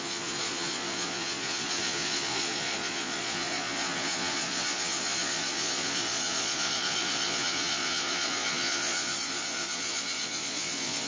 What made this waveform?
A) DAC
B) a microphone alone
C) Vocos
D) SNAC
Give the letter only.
C